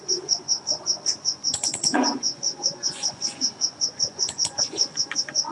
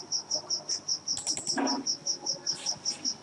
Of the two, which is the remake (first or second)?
first